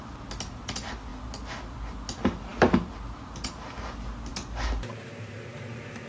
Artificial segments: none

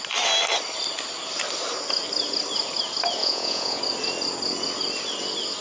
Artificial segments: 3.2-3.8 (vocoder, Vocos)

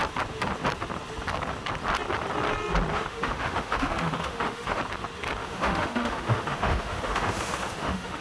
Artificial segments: 2.9-4.8 (autoencoder, DAC-VAE); 5.4-8.2

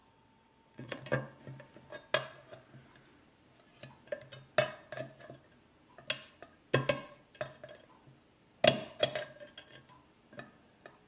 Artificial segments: 0.0-1.0 (vocoder, WaveNeXt)

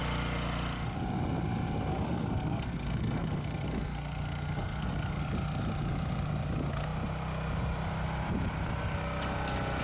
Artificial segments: 1.9-5.2 (codec, SNAC)

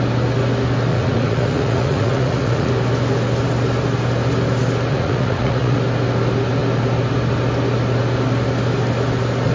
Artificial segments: 0.9-2.7 (vocoder, Vocos); 4.9-5.8